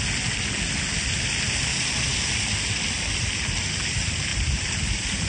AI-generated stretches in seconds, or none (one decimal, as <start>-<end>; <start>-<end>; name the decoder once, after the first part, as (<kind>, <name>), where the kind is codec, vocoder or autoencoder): 1.7-2.2 (vocoder, BigVGAN v2); 4.3-5.3